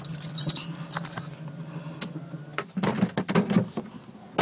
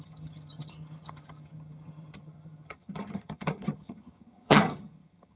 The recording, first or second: first